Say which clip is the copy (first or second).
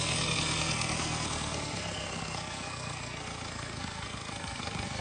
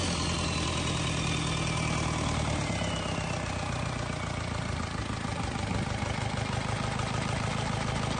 first